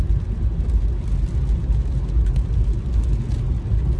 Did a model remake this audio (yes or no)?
no